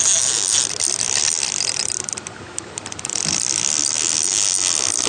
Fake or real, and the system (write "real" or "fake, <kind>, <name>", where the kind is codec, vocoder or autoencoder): real